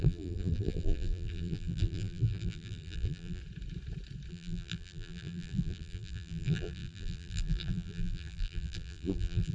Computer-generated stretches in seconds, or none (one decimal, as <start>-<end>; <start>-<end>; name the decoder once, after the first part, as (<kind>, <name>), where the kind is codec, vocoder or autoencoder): 0.0-3.4 (vocoder, BigVGAN v2); 4.3-9.5